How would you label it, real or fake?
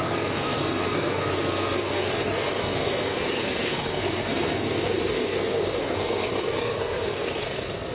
fake